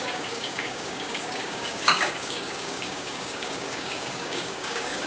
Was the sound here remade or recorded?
remade